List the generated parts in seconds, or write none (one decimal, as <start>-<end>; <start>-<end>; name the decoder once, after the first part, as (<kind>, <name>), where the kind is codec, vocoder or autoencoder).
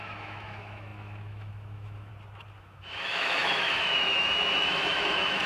0.0-2.1 (autoencoder, DAC-VAE); 2.6-5.5